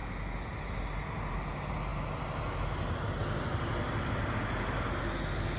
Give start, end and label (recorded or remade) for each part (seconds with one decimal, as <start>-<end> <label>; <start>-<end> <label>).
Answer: 0.0-5.6 recorded